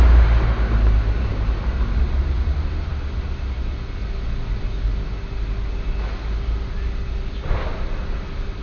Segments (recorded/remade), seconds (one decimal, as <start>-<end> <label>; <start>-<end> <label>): 0.0-8.6 recorded